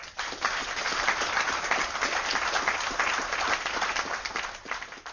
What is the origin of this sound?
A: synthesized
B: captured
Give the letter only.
B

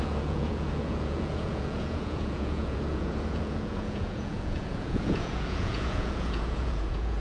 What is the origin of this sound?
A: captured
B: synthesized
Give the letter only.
B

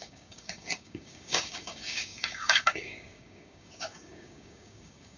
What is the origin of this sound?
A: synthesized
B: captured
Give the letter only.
A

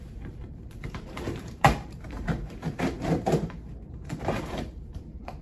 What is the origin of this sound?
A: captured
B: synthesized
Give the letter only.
B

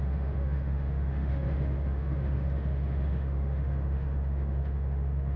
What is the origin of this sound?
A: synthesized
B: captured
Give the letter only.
A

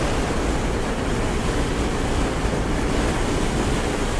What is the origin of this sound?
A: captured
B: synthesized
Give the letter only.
A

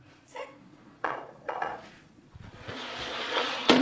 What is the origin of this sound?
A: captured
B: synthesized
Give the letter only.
B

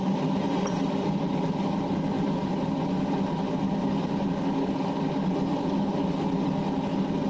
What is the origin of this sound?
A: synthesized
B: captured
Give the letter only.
B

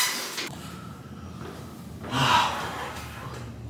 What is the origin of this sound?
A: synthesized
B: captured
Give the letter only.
B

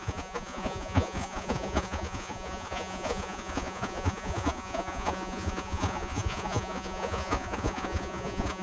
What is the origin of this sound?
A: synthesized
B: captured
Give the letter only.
A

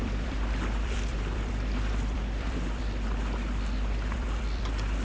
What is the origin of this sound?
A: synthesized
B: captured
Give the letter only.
A